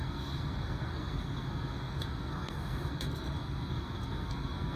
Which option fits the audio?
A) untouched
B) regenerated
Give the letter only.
B